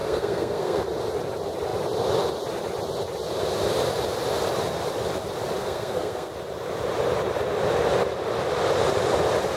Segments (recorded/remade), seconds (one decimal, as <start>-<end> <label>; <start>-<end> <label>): 0.0-0.8 remade; 0.8-5.6 recorded; 5.6-6.3 remade; 6.3-9.6 recorded